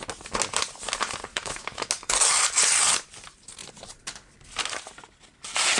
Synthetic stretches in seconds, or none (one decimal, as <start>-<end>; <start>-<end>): 1.3-1.9